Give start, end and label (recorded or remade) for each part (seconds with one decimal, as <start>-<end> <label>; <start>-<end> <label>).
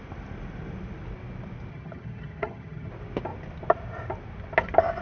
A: 0.0-1.7 recorded; 1.7-2.9 remade; 2.9-5.0 recorded